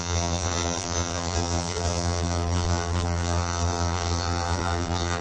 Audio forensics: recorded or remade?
remade